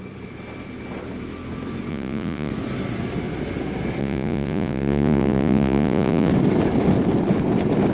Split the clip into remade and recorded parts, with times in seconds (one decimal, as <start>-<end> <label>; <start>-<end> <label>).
0.0-1.9 recorded; 1.9-2.5 remade; 2.5-4.0 recorded; 4.0-6.3 remade; 6.3-7.9 recorded